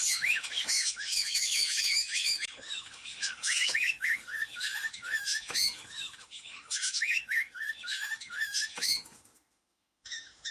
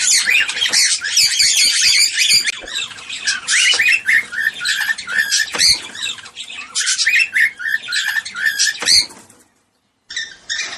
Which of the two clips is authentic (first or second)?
second